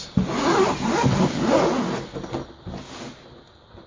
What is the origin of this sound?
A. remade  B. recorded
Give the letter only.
B